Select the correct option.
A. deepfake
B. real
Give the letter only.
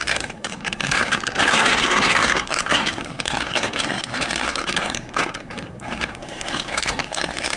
A